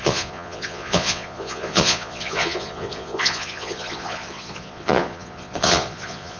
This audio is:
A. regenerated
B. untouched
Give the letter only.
A